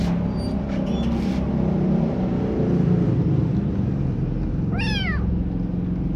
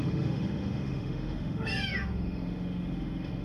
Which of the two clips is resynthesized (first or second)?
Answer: second